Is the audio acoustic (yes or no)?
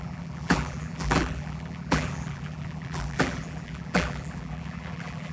no